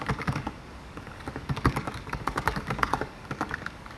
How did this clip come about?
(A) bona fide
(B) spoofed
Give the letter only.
B